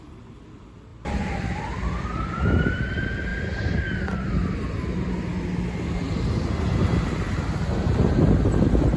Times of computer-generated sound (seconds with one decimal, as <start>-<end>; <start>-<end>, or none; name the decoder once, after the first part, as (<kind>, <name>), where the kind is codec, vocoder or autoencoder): 0.0-5.3 (vocoder, BigVGAN v2); 8.6-9.0